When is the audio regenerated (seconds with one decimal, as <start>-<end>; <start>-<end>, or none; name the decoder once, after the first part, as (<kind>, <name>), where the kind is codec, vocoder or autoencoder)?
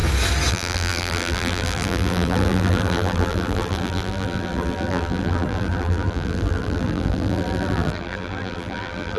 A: 0.5-9.2 (vocoder, BigVGAN v2)